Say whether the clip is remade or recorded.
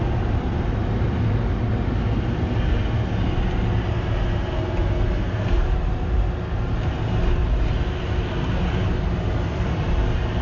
recorded